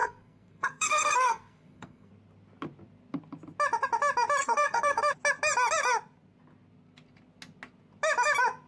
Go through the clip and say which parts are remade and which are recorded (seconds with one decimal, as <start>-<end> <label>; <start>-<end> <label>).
0.0-2.1 remade; 2.1-4.4 recorded; 4.4-5.0 remade; 5.0-8.7 recorded